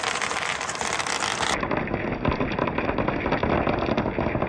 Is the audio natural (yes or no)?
yes